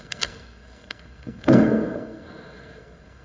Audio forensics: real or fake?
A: fake